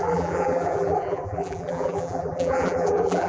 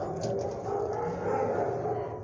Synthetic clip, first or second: first